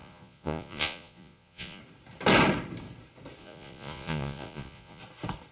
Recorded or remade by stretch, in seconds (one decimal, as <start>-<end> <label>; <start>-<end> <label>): 0.0-1.8 remade; 1.8-3.4 recorded; 3.4-5.0 remade; 5.0-5.5 recorded